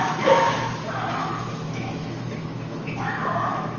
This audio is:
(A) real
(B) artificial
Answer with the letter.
B